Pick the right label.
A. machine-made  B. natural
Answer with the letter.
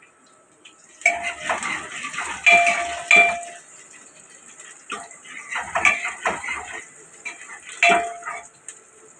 B